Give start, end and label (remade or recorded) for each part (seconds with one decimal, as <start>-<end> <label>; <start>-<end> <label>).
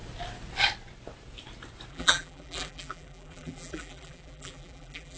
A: 0.0-1.9 recorded; 1.9-5.2 remade